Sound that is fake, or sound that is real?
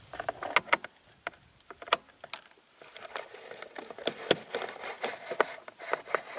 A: real